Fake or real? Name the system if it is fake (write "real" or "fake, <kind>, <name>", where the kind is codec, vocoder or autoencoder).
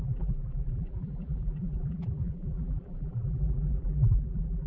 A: fake, vocoder, BigVGAN v2